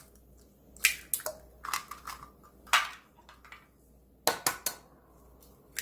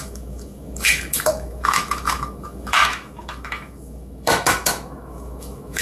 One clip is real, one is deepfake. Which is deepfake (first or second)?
second